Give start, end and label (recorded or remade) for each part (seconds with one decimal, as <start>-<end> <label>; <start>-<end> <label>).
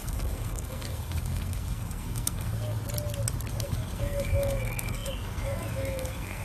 0.0-2.8 remade; 2.8-3.5 recorded; 3.5-6.4 remade